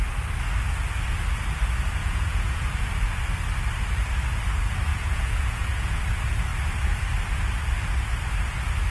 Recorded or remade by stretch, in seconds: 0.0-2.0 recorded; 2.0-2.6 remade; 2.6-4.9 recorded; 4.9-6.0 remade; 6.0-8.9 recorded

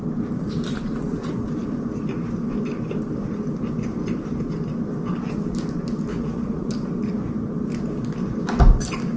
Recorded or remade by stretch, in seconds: 0.0-0.7 recorded; 0.7-1.2 remade; 1.2-6.1 recorded; 6.1-6.7 remade; 6.7-9.2 recorded

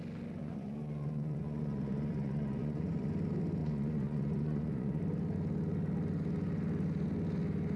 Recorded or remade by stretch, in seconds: 0.0-0.4 recorded; 0.4-3.1 remade; 3.1-3.6 recorded; 3.6-5.0 remade; 5.0-7.8 recorded

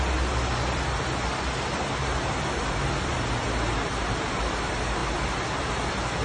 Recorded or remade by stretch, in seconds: 0.0-6.2 recorded

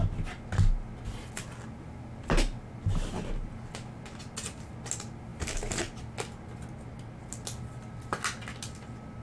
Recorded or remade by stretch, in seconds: 0.0-9.2 recorded

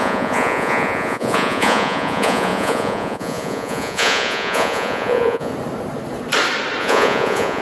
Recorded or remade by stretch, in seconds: 0.0-5.5 remade; 5.5-6.8 recorded; 6.8-7.6 remade

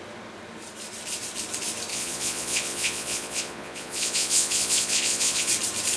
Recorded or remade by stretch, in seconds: 0.0-1.9 recorded; 1.9-5.5 remade; 5.5-6.0 recorded

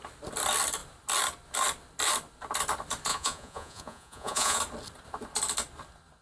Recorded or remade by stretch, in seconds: 0.0-3.1 recorded; 3.1-4.6 remade; 4.6-6.2 recorded